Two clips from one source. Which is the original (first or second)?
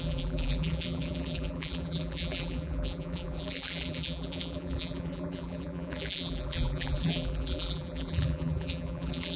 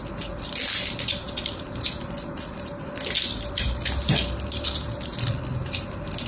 second